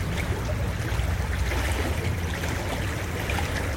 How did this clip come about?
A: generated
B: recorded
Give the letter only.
B